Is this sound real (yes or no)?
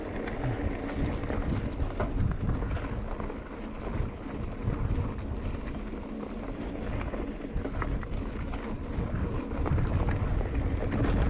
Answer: yes